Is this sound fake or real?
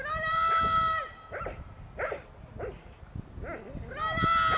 real